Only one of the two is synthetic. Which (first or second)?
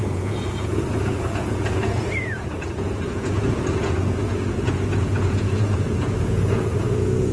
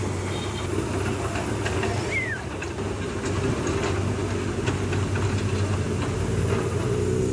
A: first